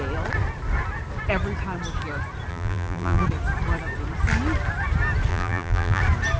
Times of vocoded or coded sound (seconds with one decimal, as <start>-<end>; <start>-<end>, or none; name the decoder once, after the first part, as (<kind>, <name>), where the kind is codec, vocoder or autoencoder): 2.5-3.2 (vocoder, BigVGAN v2); 5.3-6.0